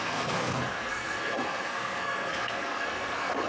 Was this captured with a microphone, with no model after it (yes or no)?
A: no